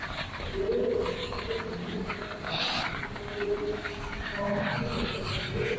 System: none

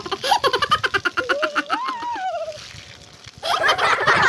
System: none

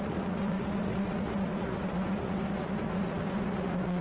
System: vocoder, Vocos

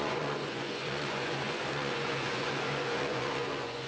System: vocoder, Vocos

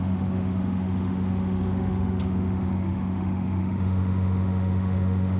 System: autoencoder, DAC-VAE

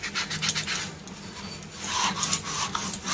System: none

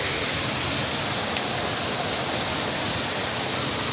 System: none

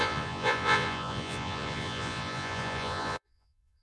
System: vocoder, Vocos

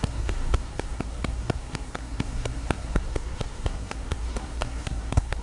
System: codec, SNAC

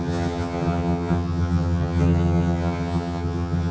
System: vocoder, HiFi-GAN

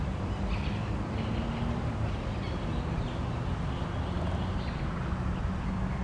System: none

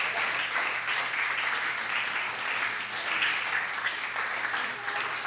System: none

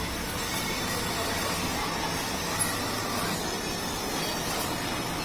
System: none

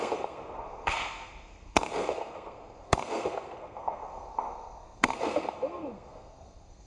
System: codec, SNAC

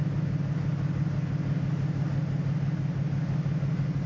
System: none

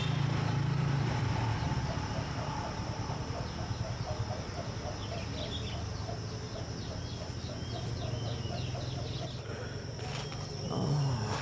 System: none